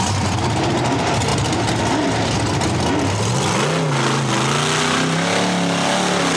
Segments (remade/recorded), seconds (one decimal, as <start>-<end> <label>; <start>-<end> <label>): 0.0-6.4 recorded